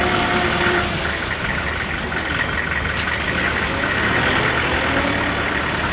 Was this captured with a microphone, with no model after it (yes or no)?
yes